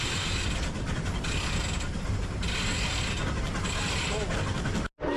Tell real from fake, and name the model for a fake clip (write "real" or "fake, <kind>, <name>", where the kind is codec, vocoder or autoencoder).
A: real